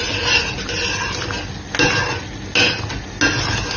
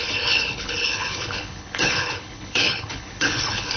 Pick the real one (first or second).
first